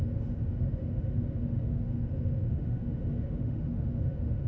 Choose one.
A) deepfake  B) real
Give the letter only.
A